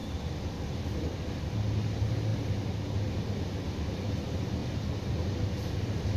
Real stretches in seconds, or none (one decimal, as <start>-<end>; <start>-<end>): 0.0-6.2